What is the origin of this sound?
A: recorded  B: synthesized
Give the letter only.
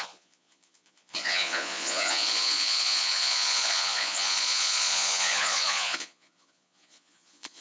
B